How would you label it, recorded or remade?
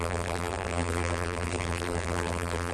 remade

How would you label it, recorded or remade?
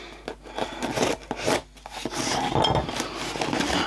recorded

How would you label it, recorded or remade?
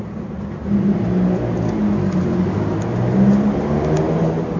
recorded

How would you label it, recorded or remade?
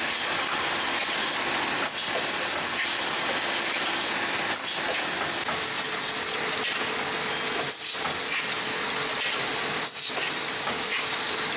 recorded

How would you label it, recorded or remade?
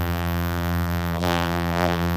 remade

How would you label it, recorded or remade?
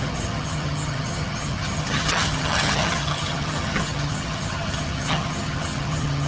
remade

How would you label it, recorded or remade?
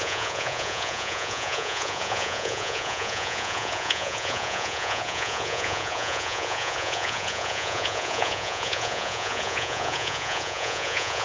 remade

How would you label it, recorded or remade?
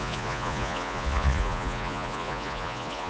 remade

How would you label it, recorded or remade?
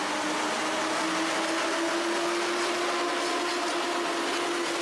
recorded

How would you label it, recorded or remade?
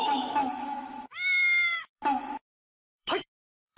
remade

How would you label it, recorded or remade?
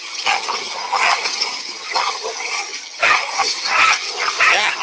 remade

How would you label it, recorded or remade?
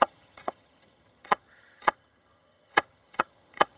remade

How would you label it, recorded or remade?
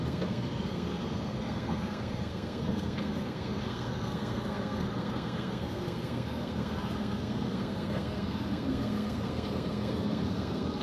remade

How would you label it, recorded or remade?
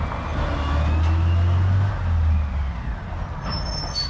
recorded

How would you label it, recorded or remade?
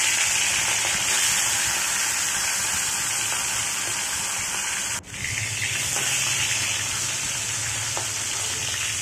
recorded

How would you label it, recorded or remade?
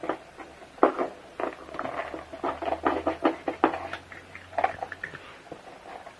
recorded